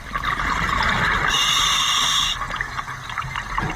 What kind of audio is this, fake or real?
real